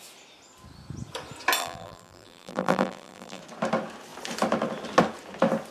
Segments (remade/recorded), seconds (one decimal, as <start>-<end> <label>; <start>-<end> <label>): 0.0-1.6 recorded; 1.6-3.4 remade; 3.4-5.7 recorded